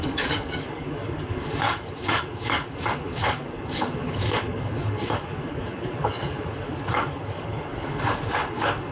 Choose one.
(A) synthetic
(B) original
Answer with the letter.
A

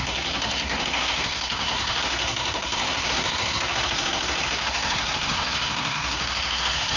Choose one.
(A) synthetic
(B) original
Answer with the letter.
A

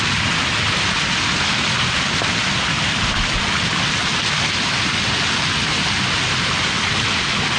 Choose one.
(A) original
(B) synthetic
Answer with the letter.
A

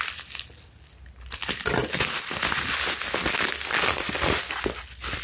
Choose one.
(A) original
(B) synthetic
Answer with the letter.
A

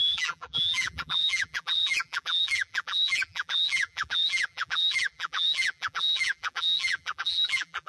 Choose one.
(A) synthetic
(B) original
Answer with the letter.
A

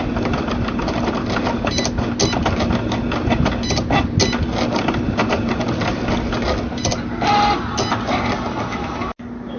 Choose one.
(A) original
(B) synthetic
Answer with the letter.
A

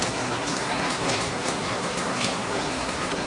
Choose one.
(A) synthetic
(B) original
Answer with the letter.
A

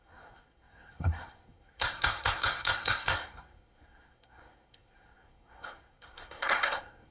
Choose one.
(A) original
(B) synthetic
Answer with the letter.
B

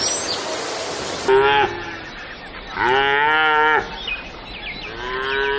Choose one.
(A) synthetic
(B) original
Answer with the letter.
B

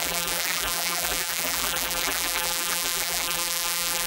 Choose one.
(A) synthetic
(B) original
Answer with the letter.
A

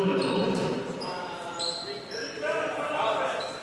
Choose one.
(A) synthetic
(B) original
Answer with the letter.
A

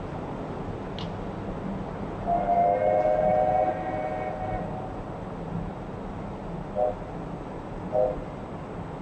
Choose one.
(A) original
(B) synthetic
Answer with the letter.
A